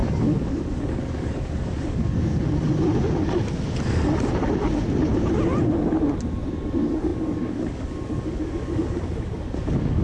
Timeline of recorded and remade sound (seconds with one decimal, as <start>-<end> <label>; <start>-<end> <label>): 0.0-2.3 remade; 2.3-6.5 recorded; 6.5-10.0 remade